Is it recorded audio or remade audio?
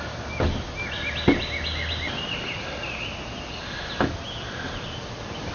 recorded